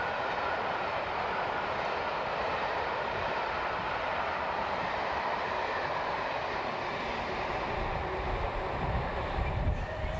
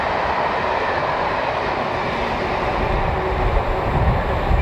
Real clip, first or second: second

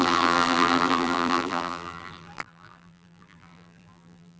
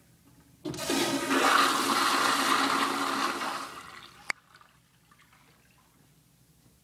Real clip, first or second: second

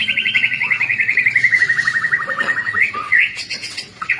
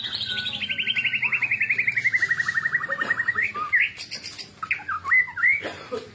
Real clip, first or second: second